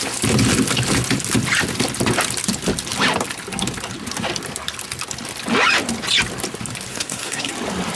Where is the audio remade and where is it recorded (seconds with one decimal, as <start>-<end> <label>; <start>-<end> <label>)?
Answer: 0.0-6.9 recorded; 6.9-7.5 remade; 7.5-8.0 recorded